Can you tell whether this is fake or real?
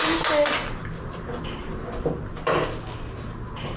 real